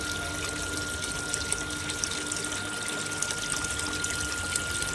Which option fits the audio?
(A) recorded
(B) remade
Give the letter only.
A